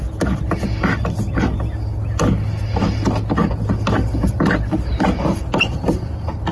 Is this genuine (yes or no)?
yes